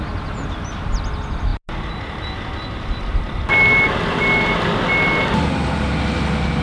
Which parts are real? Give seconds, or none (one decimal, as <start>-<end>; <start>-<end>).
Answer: 0.0-6.6